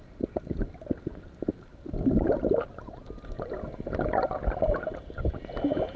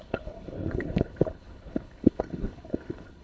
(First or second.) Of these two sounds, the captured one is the first